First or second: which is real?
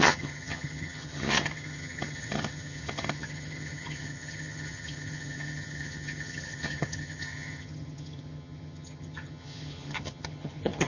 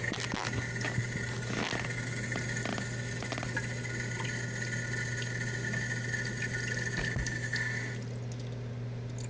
second